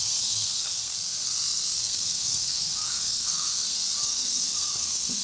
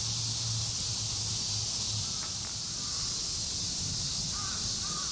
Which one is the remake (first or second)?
first